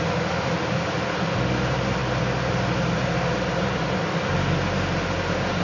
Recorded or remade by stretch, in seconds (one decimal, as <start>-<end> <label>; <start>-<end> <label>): 0.0-5.6 recorded